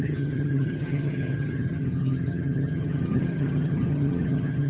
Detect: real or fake fake